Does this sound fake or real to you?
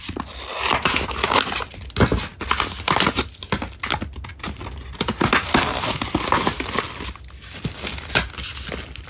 real